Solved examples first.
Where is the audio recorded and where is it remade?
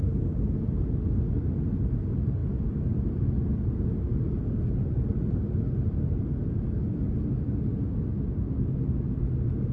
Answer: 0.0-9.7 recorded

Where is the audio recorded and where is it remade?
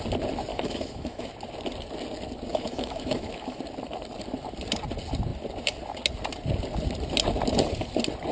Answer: 0.0-0.5 recorded; 0.5-1.3 remade; 1.3-2.5 recorded; 2.5-3.6 remade; 3.6-8.3 recorded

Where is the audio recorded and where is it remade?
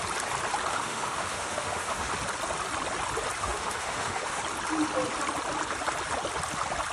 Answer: 0.0-0.7 recorded; 0.7-2.1 remade; 2.1-3.4 recorded; 3.4-4.4 remade; 4.4-6.9 recorded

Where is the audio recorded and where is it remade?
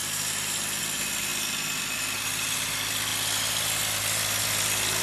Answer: 0.0-5.0 recorded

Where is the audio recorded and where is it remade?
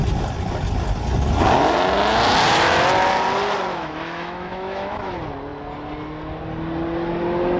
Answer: 0.0-3.7 recorded; 3.7-5.0 remade; 5.0-7.6 recorded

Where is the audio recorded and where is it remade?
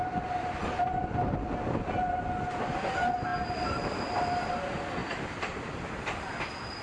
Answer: 0.0-6.8 recorded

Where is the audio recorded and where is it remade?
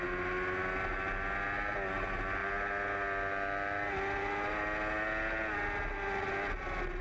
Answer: 0.0-7.0 recorded